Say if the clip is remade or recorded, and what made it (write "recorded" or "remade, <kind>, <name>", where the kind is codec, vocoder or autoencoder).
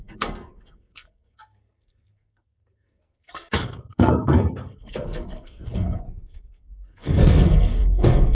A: remade, codec, SNAC